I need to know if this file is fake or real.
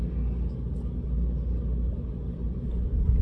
real